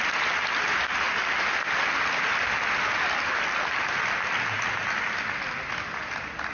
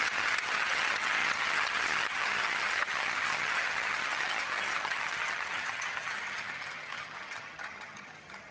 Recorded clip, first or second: first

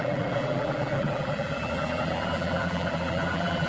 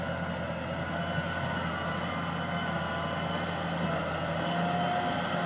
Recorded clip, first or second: second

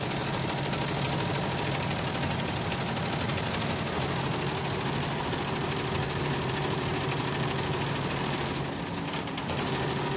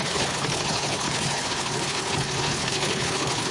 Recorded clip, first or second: first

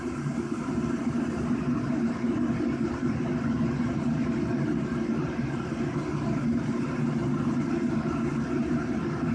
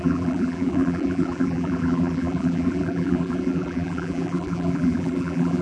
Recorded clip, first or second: first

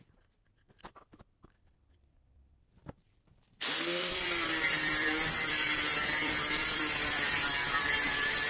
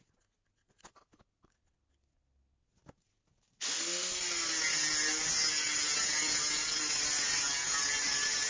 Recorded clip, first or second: second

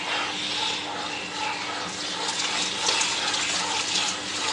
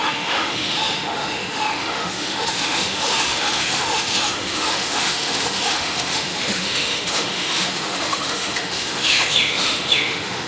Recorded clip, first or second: first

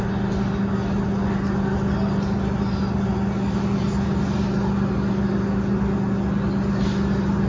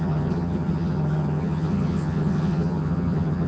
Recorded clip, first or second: first